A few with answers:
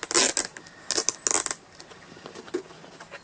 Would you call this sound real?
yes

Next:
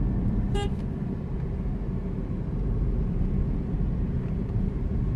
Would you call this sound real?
yes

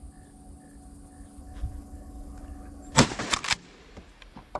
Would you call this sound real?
yes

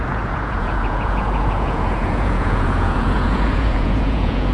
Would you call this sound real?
no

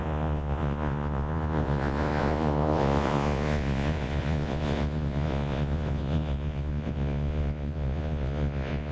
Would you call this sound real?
no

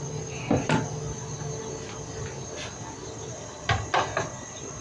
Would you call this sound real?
yes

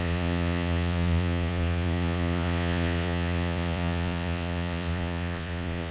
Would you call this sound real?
no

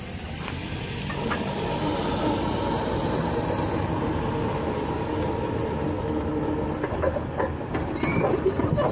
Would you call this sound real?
yes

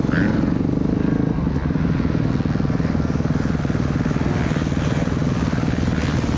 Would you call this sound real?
yes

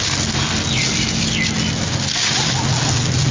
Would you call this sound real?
yes